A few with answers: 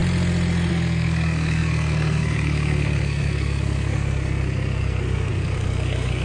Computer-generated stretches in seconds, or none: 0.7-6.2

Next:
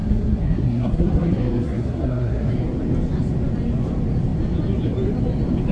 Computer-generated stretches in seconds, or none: 0.0-2.5

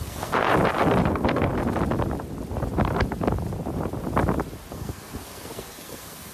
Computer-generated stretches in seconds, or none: 0.0-0.5; 1.1-1.5; 4.7-6.3

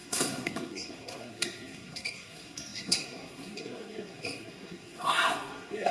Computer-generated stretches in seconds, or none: 0.0-5.9

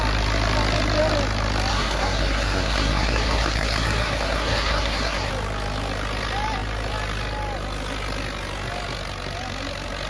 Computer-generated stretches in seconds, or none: 1.7-5.3

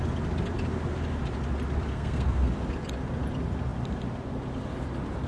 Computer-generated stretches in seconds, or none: 1.9-2.5

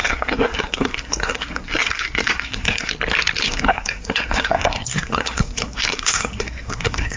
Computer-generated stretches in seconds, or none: 0.0-2.9; 3.4-7.2

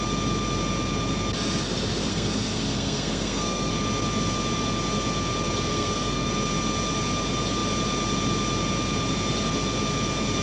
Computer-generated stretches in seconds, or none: 2.1-3.7; 5.7-6.3